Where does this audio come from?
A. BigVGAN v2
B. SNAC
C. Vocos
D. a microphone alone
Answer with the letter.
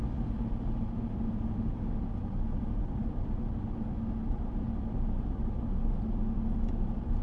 D